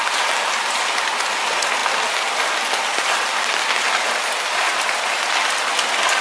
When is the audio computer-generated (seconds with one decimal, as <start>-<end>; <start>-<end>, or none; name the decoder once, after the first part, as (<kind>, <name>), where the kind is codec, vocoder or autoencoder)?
none